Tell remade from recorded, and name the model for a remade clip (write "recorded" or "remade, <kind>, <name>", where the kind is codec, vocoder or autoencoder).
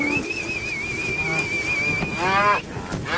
recorded